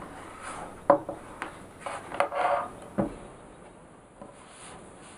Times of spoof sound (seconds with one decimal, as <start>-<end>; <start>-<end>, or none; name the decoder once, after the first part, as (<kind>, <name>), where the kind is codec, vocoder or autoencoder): none